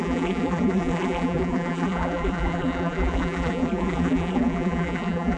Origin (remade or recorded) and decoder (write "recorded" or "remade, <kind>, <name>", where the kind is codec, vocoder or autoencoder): remade, vocoder, BigVGAN v2